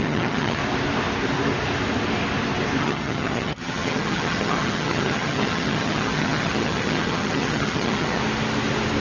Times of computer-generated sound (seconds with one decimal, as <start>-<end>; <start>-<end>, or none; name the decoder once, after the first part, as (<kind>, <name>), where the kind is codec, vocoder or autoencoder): 0.0-0.6 (vocoder, HiFi-GAN); 2.8-8.2